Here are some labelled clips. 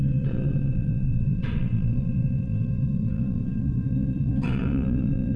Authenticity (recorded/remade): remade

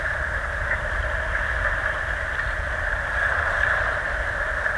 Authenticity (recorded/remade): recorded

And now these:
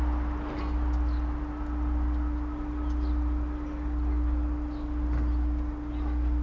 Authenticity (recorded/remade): recorded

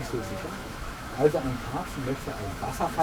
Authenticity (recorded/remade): remade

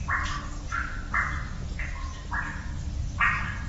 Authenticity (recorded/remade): recorded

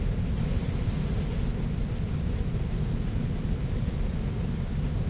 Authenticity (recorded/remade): recorded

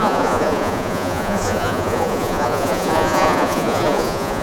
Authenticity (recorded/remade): remade